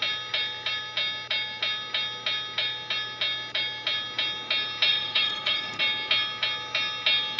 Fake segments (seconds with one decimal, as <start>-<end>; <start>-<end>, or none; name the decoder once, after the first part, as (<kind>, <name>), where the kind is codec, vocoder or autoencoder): 4.9-5.8 (vocoder, Vocos)